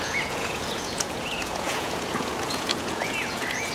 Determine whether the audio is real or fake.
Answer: fake